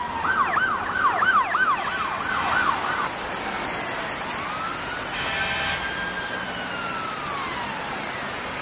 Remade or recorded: recorded